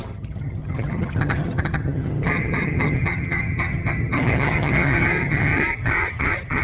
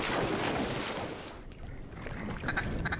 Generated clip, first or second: first